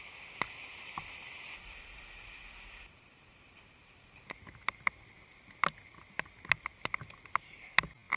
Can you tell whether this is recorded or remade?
recorded